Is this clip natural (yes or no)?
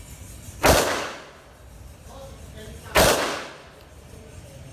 yes